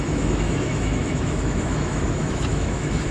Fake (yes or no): yes